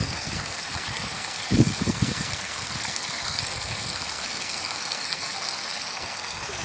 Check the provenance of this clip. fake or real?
fake